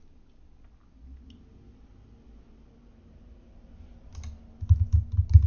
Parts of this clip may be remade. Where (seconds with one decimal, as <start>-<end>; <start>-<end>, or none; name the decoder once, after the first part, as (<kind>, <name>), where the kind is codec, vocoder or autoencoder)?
none